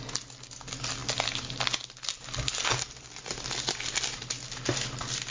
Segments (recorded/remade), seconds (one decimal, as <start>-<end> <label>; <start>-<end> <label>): 0.0-5.3 recorded